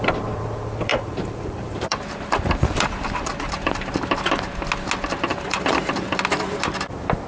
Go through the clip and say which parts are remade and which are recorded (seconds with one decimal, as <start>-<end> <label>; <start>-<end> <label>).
0.0-0.9 recorded; 0.9-3.9 remade; 3.9-5.3 recorded; 5.3-6.0 remade; 6.0-7.3 recorded